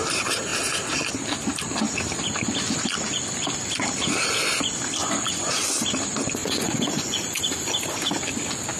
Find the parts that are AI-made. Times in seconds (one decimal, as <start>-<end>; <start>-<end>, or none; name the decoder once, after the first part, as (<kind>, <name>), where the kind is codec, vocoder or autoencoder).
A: 5.0-5.7 (vocoder, Vocos); 6.4-7.4